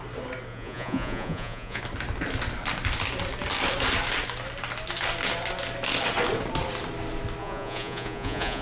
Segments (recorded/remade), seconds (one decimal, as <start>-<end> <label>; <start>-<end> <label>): 0.0-0.5 recorded; 0.5-1.8 remade; 1.8-7.4 recorded; 7.4-8.6 remade